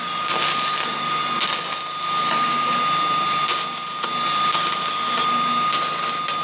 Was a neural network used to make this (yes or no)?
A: no